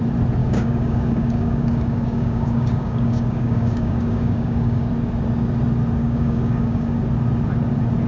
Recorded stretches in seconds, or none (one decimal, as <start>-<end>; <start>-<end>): 0.0-0.4; 4.9-6.0; 7.0-8.1